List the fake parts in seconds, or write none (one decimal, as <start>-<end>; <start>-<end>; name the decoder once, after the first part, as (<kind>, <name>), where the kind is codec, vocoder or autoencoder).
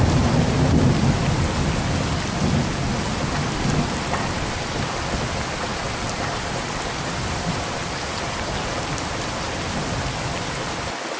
5.8-10.1 (vocoder, BigVGAN v2)